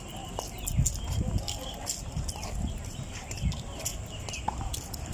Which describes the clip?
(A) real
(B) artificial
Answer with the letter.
A